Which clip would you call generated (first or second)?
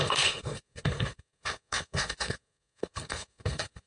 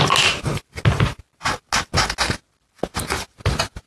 first